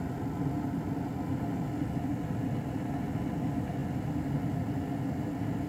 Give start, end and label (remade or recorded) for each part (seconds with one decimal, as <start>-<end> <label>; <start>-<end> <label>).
0.0-5.7 recorded